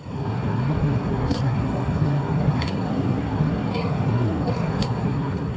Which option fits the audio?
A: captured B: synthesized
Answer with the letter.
B